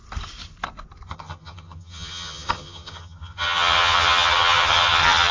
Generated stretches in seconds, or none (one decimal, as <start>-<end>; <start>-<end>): 1.1-5.3